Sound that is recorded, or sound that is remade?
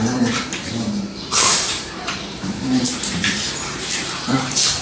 remade